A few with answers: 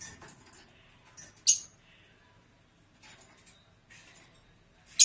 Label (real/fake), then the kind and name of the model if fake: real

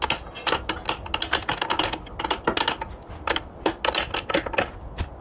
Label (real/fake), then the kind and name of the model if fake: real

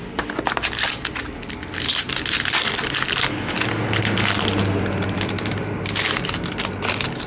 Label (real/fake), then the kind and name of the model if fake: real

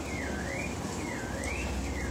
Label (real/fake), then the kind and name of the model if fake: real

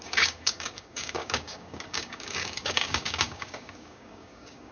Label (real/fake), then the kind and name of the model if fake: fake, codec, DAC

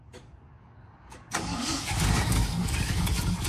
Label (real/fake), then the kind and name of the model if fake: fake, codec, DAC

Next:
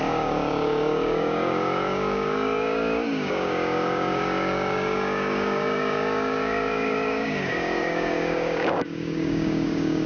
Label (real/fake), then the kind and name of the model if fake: fake, codec, DAC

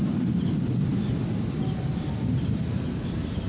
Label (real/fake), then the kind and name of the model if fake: real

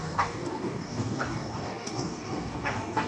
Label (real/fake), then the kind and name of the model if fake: fake, codec, DAC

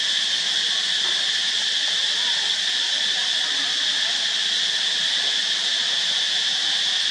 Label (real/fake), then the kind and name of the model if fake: real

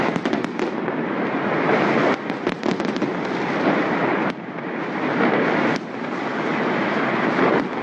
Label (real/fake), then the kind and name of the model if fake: real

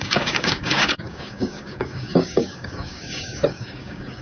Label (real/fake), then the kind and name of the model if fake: fake, codec, DAC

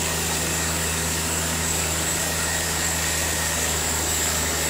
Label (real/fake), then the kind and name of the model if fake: fake, codec, DAC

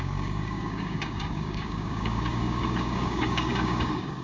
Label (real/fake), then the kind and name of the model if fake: fake, codec, DAC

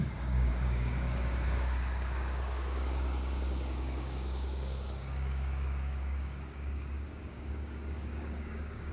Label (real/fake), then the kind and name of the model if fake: fake, codec, DAC